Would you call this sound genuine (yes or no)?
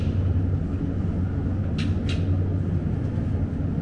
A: yes